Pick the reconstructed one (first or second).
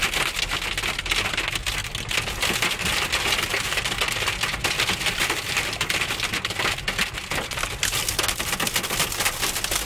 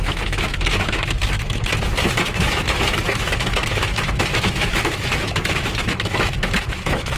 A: second